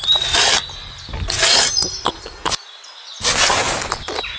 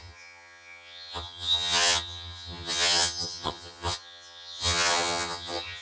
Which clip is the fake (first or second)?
second